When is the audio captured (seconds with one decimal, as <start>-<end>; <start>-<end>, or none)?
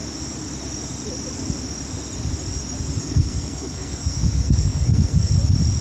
0.0-3.0; 5.3-5.8